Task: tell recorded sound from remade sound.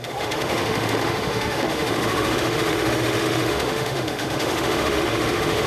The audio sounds remade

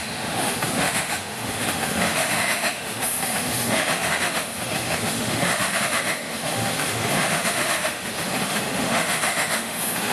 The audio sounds remade